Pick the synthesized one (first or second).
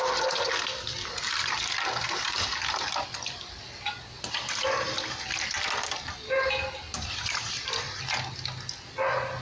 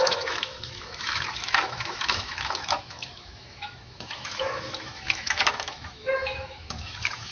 second